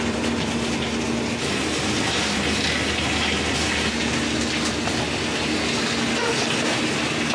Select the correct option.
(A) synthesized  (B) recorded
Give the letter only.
B